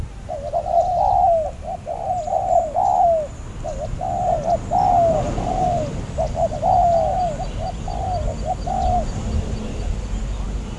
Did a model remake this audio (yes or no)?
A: no